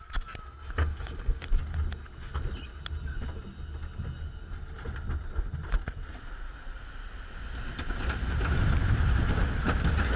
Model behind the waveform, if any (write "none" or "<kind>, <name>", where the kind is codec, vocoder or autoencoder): none